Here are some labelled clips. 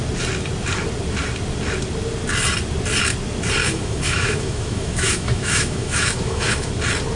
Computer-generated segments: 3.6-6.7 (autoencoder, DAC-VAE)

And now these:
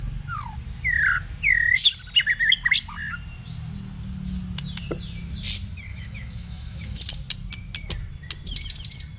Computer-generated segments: 5.9-7.0 (autoencoder, DAC-VAE)

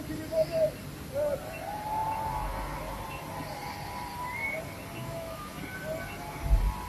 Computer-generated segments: 5.0-5.6 (autoencoder, DAC-VAE)

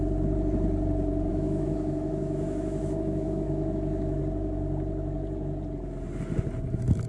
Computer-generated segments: 1.3-4.2 (autoencoder, DAC-VAE)

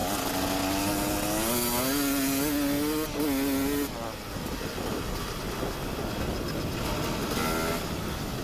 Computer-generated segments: none

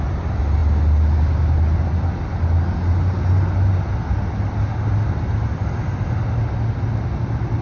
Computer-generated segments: none

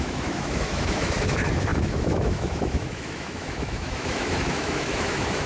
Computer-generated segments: 0.0-5.5 (autoencoder, DAC-VAE)

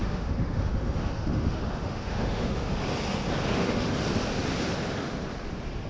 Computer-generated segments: 0.0-2.7 (autoencoder, DAC-VAE); 3.4-3.9